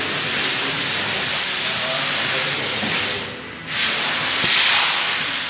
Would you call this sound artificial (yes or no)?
no